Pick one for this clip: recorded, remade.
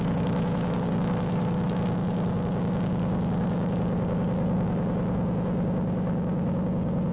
remade